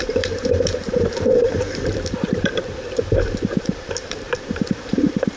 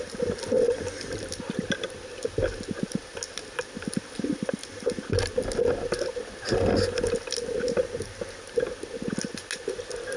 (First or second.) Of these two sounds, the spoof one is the first